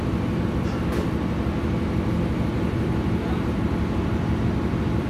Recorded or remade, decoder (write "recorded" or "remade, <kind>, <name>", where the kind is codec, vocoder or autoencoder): remade, vocoder, BigVGAN v2